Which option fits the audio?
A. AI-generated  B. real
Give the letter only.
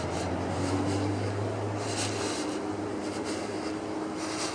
B